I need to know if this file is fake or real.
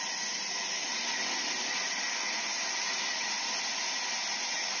real